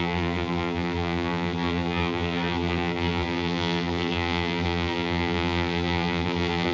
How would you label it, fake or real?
fake